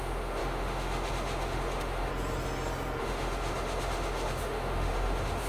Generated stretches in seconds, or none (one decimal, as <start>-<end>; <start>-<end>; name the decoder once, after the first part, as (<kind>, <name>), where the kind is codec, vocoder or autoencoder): 0.0-2.1 (autoencoder, DAC-VAE); 3.0-5.5